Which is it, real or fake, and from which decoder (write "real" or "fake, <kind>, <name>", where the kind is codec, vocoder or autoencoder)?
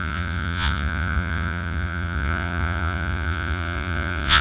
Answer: fake, vocoder, Vocos